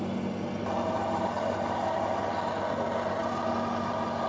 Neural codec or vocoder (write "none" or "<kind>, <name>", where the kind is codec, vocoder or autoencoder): none